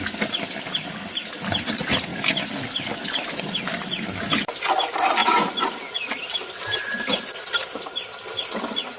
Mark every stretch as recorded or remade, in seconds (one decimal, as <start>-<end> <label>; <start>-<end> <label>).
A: 0.0-9.0 recorded